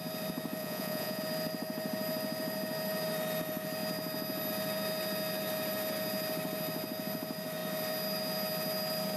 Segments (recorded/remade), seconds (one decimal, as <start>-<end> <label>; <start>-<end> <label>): 0.0-0.6 recorded; 0.6-1.2 remade; 1.2-9.2 recorded